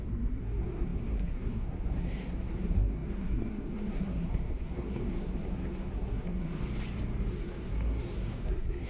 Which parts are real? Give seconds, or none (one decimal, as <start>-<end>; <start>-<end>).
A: 6.6-7.3